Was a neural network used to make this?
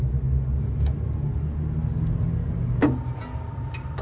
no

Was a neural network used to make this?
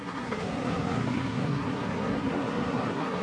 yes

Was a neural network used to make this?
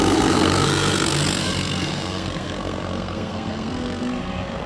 yes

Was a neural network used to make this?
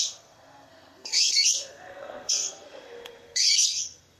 yes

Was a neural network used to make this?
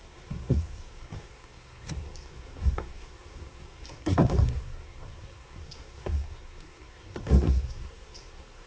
yes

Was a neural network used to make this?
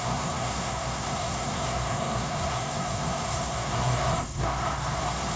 yes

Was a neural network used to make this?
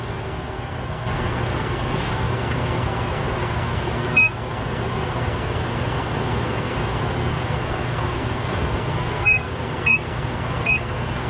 yes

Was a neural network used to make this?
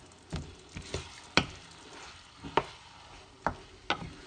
no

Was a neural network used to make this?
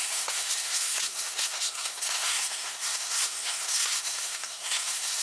yes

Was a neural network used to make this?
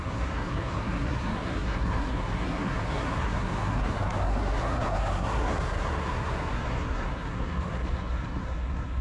yes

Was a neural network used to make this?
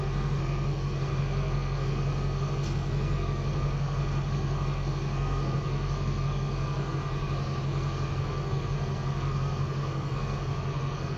yes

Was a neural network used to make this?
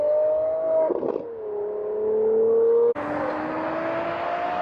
no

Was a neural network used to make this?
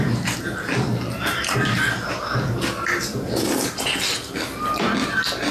no